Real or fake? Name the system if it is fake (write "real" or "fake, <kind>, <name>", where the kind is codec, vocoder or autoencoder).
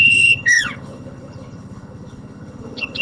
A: fake, codec, HILCodec